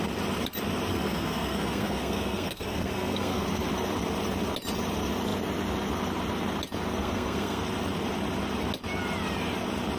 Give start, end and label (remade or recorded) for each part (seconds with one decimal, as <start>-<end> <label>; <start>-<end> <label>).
0.0-0.9 recorded; 0.9-3.4 remade; 3.4-7.0 recorded; 7.0-7.6 remade; 7.6-10.0 recorded